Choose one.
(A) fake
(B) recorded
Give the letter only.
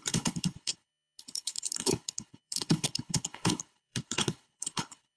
A